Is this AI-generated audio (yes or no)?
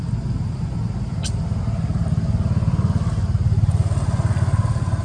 no